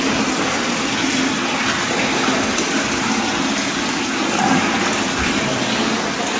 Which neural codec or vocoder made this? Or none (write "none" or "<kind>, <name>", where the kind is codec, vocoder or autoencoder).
none